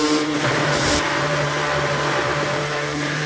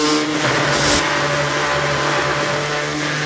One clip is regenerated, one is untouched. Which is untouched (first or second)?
second